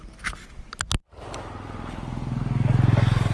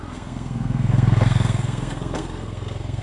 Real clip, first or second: first